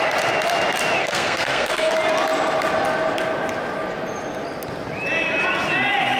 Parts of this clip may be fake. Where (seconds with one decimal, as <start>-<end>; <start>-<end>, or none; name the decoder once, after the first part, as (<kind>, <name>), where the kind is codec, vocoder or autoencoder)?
1.0-1.9 (codec, SNAC)